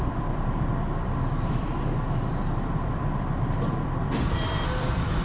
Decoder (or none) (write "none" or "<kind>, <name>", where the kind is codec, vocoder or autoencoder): vocoder, BigVGAN v2